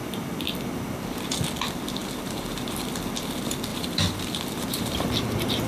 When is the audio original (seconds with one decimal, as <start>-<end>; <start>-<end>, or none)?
0.0-2.0; 2.9-3.7; 5.2-5.7